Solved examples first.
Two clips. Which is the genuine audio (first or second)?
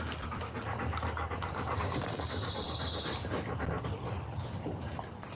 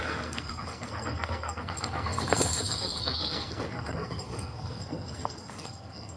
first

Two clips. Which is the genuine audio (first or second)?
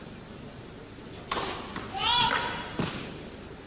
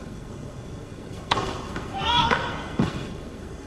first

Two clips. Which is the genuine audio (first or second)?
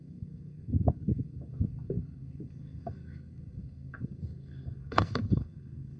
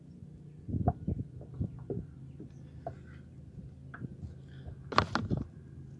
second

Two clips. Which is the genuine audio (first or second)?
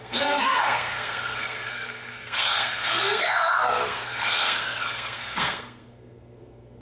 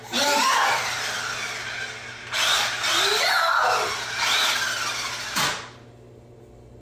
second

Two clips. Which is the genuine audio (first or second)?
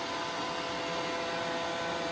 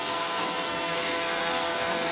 first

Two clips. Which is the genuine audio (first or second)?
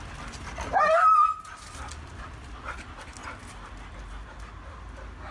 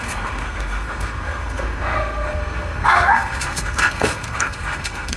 first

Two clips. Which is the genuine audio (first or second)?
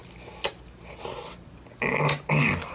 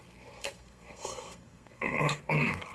first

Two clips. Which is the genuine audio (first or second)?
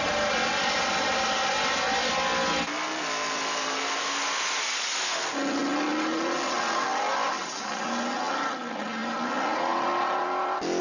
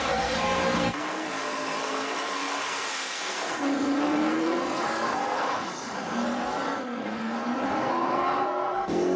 first